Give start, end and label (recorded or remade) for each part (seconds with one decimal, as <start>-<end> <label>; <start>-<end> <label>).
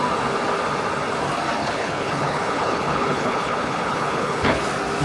0.0-1.6 recorded; 1.6-4.6 remade; 4.6-5.0 recorded